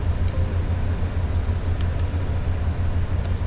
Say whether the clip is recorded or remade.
recorded